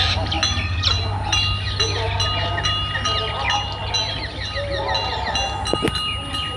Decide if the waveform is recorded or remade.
recorded